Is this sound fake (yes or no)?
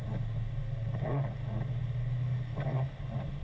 no